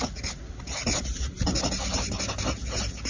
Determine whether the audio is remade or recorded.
recorded